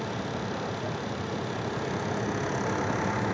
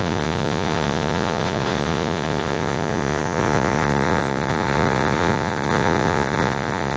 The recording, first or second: first